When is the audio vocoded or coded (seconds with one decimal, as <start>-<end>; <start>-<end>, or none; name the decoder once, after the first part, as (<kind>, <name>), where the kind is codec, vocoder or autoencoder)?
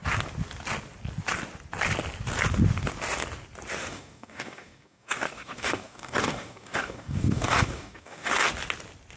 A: 3.8-8.3 (codec, DAC)